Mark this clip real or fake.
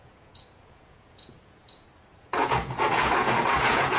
fake